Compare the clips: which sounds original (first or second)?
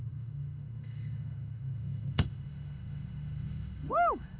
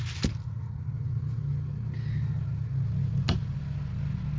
second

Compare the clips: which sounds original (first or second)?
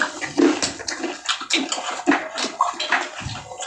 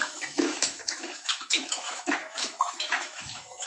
first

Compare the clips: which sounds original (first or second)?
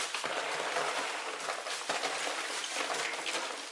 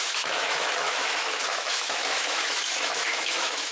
first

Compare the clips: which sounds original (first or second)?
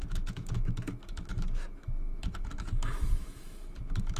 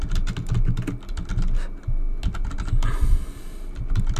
second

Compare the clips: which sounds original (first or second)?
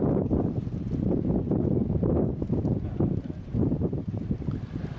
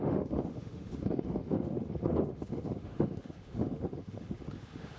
first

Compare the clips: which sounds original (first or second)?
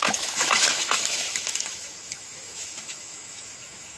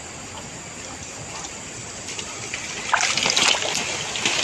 second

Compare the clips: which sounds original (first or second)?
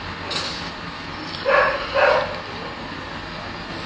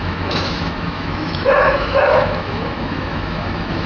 first